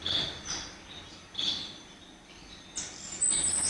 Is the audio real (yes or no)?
yes